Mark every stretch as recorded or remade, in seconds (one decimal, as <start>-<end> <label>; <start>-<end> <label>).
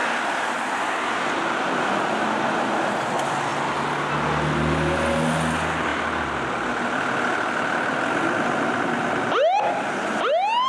0.0-10.7 recorded